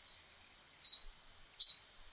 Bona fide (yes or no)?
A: yes